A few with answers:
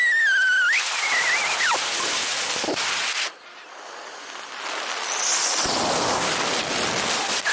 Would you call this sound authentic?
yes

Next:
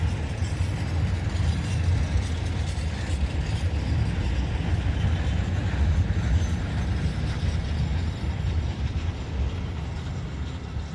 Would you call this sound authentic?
yes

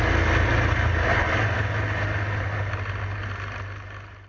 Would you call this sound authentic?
yes